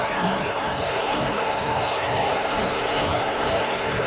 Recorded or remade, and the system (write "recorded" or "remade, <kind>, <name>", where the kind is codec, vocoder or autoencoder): remade, codec, SNAC